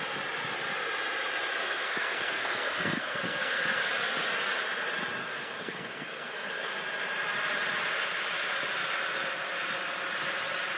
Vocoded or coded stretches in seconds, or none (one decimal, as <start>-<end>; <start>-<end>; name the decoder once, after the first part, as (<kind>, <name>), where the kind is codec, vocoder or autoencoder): 1.6-3.9 (codec, SNAC); 5.2-6.7